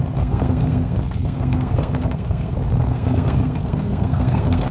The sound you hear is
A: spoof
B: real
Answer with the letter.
A